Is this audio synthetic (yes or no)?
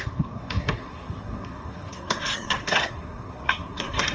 yes